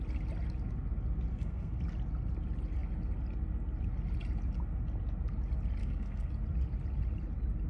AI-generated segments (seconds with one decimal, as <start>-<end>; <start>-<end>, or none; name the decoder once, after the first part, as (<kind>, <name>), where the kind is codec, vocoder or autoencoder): 1.3-1.8 (codec, SNAC); 5.8-6.3